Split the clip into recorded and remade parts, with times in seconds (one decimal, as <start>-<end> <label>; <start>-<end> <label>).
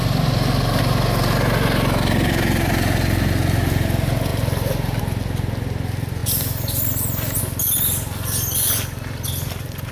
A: 0.0-9.9 recorded